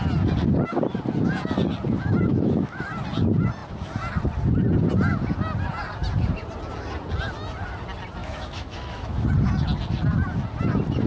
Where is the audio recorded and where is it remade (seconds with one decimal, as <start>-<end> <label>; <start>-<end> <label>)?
0.0-2.3 recorded; 2.3-2.9 remade; 2.9-8.2 recorded; 8.2-9.3 remade; 9.3-11.1 recorded